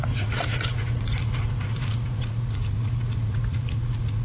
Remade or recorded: remade